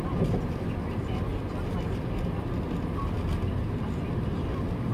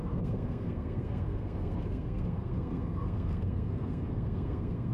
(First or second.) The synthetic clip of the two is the second